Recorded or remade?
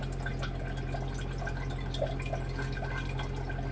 recorded